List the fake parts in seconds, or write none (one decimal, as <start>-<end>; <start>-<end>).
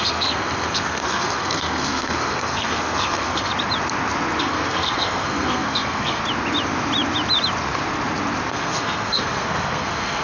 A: 0.0-3.5; 4.4-6.2; 8.5-10.2